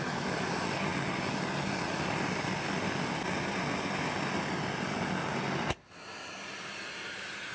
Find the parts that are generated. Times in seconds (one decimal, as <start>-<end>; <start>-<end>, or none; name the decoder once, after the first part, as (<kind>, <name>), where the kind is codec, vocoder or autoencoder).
none